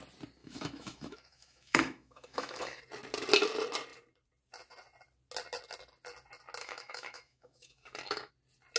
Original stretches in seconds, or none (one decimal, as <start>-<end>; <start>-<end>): 0.0-0.4; 2.8-6.6; 8.3-8.8